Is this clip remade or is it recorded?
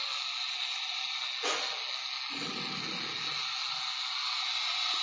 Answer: recorded